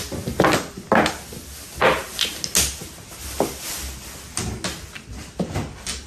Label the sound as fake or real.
real